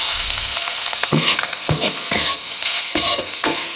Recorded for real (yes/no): no